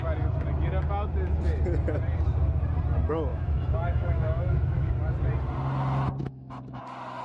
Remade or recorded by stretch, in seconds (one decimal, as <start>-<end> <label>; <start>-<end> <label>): 0.0-3.3 recorded; 3.3-4.9 remade; 4.9-6.2 recorded; 6.2-6.8 remade; 6.8-7.2 recorded